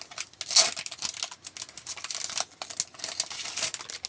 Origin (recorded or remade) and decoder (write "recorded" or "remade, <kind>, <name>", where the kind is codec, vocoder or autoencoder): recorded